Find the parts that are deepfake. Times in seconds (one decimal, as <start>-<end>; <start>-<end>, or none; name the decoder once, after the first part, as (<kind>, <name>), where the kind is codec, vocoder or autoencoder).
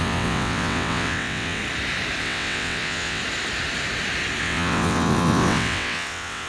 0.0-1.6 (vocoder, WaveNeXt); 2.2-3.2; 4.4-6.5